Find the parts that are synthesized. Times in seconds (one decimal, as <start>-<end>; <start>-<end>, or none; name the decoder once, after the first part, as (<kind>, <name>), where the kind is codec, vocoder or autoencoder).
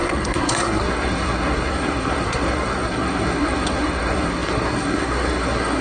0.0-5.8 (codec, SNAC)